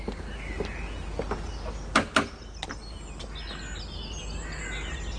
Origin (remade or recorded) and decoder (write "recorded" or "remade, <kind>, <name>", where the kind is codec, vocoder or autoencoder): recorded